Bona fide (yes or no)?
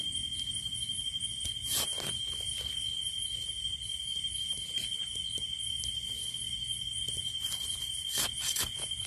yes